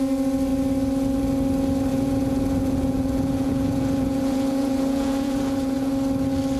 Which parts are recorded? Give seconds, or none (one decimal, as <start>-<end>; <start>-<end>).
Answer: 0.0-1.9; 5.9-6.6